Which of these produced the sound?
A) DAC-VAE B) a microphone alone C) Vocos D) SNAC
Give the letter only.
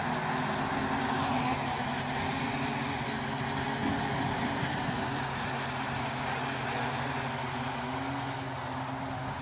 B